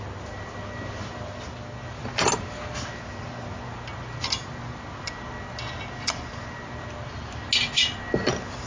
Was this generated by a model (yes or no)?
no